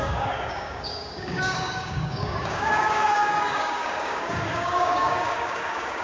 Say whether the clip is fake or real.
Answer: fake